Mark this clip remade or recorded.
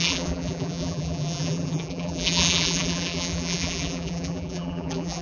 remade